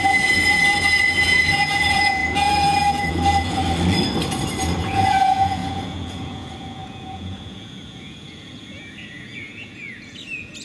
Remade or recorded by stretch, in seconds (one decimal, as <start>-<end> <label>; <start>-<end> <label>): 0.0-3.6 remade; 3.6-4.8 recorded; 4.8-10.6 remade